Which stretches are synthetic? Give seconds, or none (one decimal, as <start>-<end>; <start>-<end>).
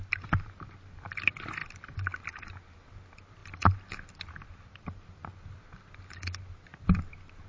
none